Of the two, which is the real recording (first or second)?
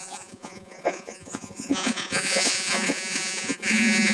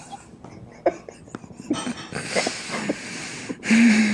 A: second